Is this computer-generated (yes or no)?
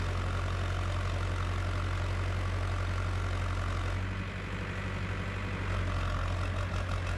no